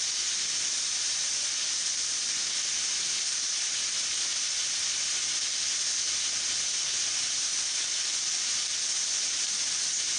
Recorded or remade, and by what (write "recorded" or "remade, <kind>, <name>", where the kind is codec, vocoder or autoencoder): recorded